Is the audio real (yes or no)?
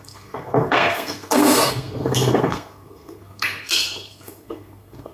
no